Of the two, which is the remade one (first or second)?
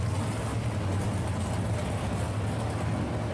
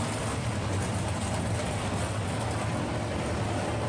second